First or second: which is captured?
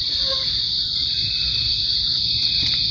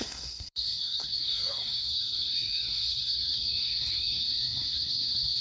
first